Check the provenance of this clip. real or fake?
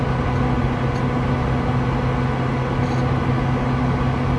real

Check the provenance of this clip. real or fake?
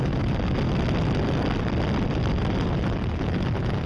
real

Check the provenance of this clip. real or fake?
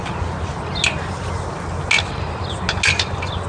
real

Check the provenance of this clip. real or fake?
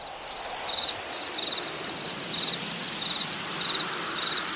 real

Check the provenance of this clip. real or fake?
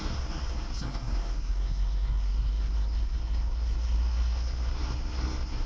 fake